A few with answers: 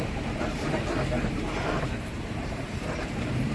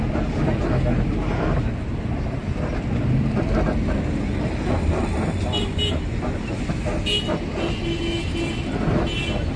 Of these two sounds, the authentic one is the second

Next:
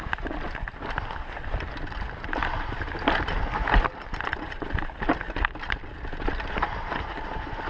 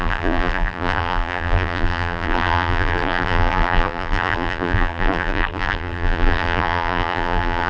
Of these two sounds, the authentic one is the first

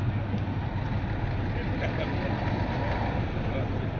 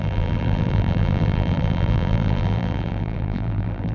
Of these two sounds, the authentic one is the first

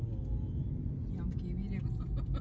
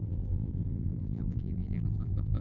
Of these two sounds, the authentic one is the first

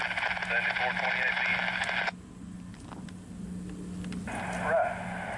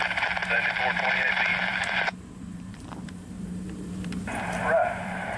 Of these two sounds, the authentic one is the first